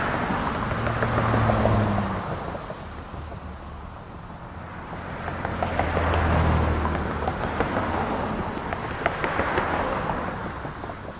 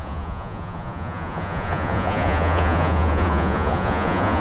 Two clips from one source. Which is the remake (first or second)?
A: second